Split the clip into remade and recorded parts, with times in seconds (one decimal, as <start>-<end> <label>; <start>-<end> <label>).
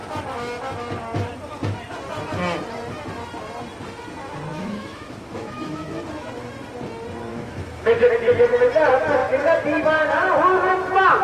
0.0-4.5 recorded; 4.5-6.0 remade; 6.0-7.3 recorded; 7.3-8.0 remade; 8.0-11.2 recorded